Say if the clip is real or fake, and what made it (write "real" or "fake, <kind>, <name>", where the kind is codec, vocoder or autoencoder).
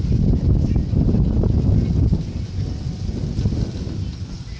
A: real